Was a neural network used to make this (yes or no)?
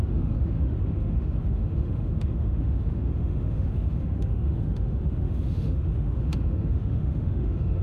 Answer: yes